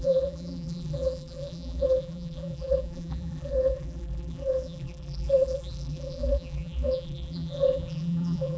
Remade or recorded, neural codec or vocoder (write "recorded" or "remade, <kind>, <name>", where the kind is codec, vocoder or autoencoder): remade, vocoder, BigVGAN v2